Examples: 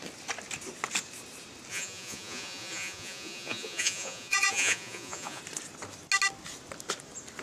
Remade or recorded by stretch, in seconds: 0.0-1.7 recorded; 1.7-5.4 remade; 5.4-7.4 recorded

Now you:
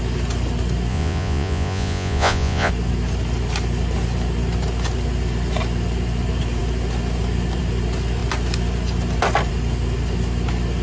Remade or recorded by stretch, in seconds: 0.0-0.9 recorded; 0.9-2.7 remade; 2.7-10.8 recorded

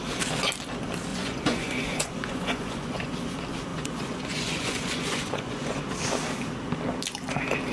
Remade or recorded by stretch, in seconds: 0.0-1.1 recorded; 1.1-3.1 remade; 3.1-3.7 recorded; 3.7-5.8 remade; 5.8-7.7 recorded

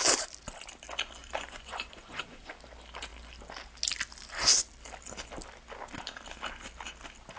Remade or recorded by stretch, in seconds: 0.0-1.2 recorded; 1.2-2.5 remade; 2.5-7.4 recorded